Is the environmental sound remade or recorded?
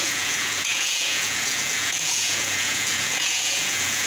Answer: remade